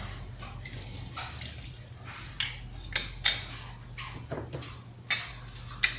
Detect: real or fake real